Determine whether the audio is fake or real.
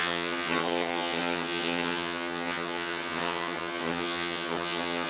fake